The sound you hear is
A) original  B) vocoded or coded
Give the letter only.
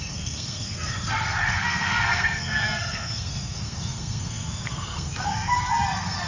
B